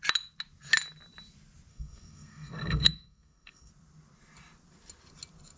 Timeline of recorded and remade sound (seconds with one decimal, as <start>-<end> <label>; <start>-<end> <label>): 0.0-1.7 recorded; 1.7-3.7 remade; 3.7-5.6 recorded